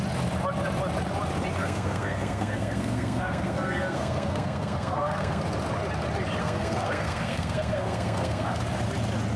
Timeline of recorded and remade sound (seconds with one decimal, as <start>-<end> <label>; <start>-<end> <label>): 0.0-1.6 recorded; 1.6-5.4 remade; 5.4-6.4 recorded; 6.4-8.6 remade; 8.6-9.4 recorded